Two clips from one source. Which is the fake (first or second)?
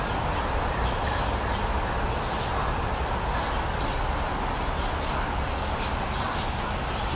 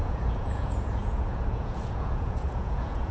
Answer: second